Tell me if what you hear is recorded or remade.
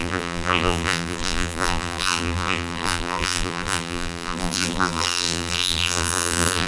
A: remade